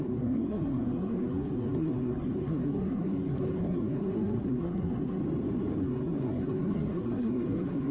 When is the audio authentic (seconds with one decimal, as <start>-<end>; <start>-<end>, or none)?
5.2-5.8